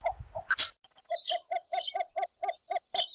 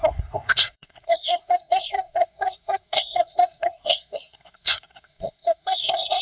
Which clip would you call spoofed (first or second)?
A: second